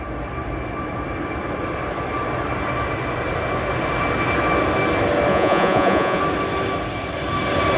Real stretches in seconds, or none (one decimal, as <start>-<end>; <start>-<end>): 0.0-5.3; 6.2-7.8